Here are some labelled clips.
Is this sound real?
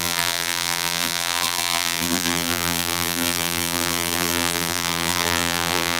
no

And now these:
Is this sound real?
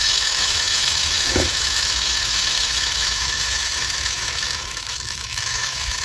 no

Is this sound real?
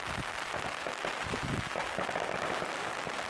yes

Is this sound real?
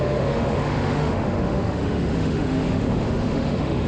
no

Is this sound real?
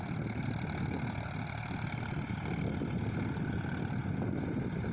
yes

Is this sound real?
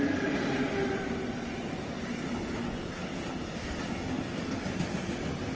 yes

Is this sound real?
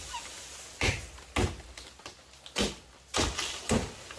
yes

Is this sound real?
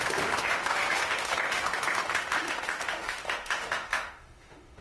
no